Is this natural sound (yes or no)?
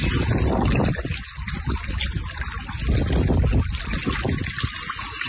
yes